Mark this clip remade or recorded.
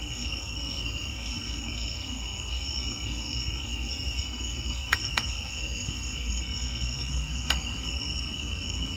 remade